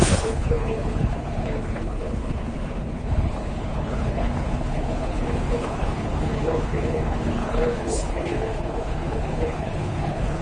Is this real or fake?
fake